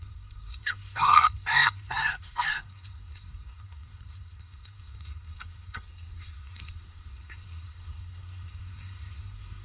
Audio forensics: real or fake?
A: fake